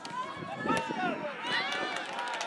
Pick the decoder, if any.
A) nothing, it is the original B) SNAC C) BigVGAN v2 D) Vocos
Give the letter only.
A